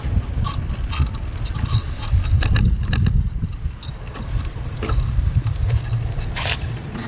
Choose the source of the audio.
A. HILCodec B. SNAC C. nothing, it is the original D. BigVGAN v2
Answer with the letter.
C